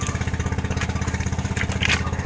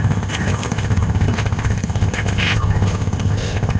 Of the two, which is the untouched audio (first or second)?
first